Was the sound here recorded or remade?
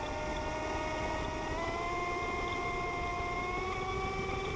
recorded